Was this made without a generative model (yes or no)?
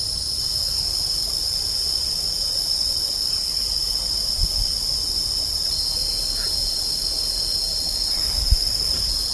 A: no